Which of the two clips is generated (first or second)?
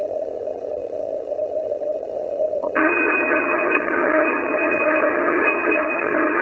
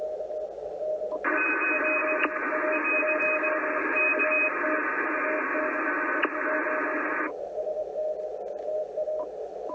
first